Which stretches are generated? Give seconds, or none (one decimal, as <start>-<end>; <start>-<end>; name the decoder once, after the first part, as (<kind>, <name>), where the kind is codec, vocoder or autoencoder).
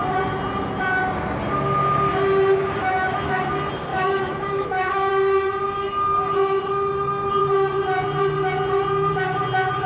2.8-3.4 (autoencoder, DAC-VAE); 3.9-5.1